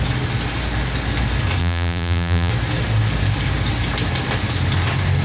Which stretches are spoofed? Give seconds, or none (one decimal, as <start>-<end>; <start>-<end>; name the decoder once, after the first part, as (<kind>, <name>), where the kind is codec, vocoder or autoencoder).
1.6-2.5 (vocoder, BigVGAN v2)